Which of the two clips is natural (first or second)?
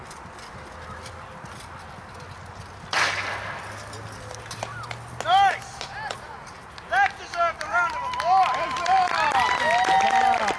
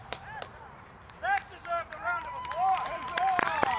first